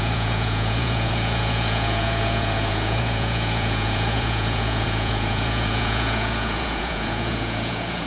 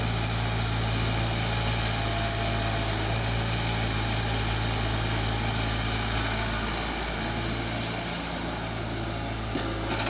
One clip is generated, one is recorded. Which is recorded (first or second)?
second